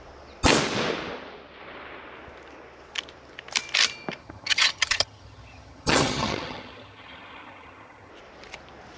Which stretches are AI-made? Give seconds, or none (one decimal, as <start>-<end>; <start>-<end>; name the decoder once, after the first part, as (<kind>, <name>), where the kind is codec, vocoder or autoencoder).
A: 4.2-8.1 (vocoder, HiFi-GAN)